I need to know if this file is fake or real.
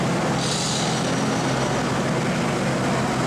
real